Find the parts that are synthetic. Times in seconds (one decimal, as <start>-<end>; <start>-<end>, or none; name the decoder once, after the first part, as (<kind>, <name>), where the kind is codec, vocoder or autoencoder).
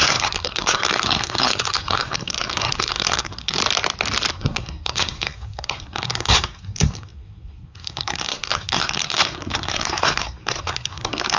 0.0-3.6 (codec, SNAC); 4.3-11.4